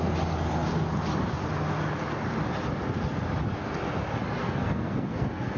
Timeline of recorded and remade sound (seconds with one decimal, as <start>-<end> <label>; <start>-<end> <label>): 0.0-4.4 recorded; 4.4-5.6 remade